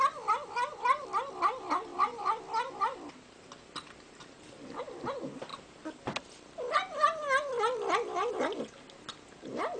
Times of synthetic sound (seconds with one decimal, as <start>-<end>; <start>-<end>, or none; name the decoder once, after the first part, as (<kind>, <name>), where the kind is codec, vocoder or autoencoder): none